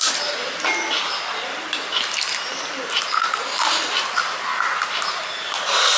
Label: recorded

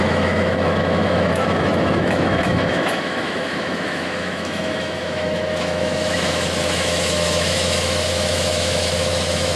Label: remade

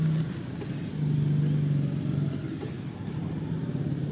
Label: recorded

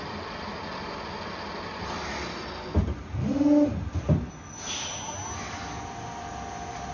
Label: recorded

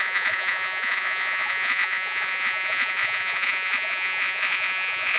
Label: remade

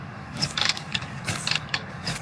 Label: remade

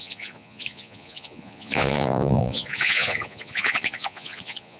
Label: remade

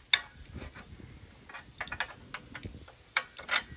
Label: recorded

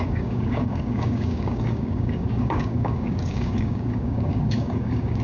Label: remade